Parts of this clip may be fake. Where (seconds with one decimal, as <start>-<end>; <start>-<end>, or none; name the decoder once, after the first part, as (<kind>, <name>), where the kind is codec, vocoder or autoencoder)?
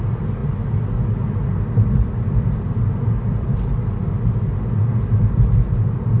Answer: none